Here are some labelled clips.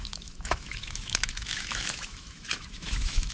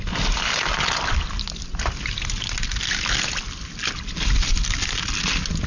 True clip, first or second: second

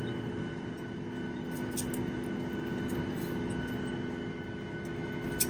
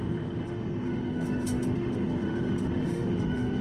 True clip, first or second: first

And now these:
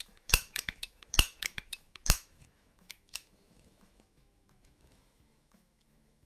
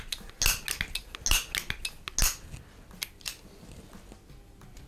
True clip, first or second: second